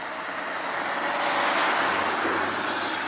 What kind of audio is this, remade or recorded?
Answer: recorded